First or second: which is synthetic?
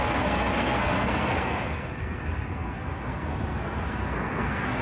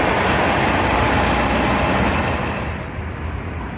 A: first